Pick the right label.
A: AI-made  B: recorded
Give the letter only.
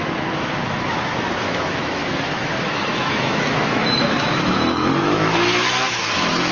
A